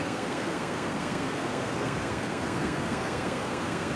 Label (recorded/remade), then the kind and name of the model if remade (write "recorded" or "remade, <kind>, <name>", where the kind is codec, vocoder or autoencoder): remade, codec, SNAC